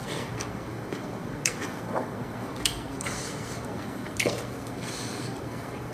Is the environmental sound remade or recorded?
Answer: remade